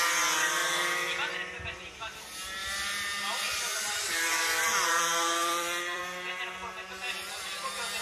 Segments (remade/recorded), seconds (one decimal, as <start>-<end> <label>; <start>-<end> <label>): 0.0-0.6 recorded; 0.6-1.3 remade; 1.3-2.6 recorded; 2.6-6.0 remade; 6.0-8.0 recorded